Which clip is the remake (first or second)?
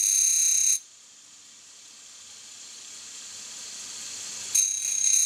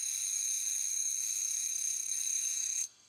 second